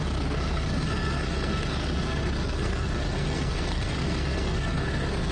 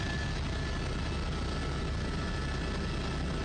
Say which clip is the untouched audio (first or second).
second